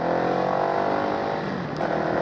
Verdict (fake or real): real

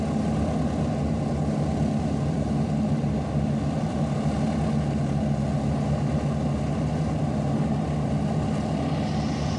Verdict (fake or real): real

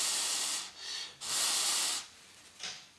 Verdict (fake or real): real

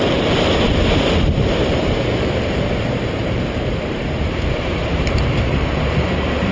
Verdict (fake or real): fake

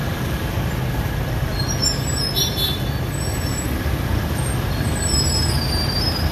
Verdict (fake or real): real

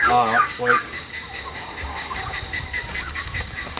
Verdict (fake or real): fake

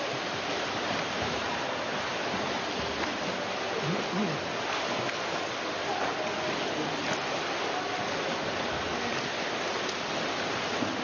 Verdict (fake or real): real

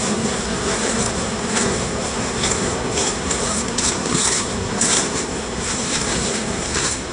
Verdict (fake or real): fake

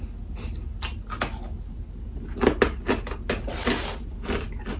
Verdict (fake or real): real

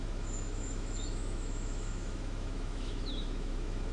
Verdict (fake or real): fake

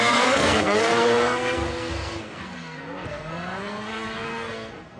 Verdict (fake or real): fake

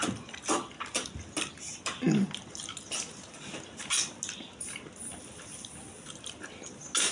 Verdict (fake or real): real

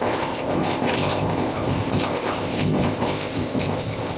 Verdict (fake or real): fake